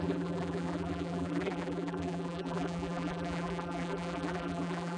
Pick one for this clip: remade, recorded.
remade